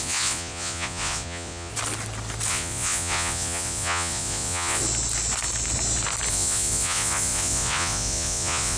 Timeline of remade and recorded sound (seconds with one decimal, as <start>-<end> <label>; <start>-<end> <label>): 0.0-1.7 remade; 1.7-2.5 recorded; 2.5-4.8 remade; 4.8-6.3 recorded; 6.3-8.8 remade